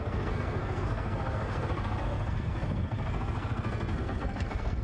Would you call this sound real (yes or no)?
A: no